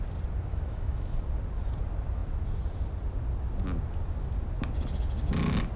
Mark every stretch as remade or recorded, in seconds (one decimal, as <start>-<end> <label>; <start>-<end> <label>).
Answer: 0.0-0.5 recorded; 0.5-1.2 remade; 1.2-5.8 recorded